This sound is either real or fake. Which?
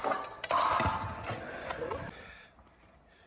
real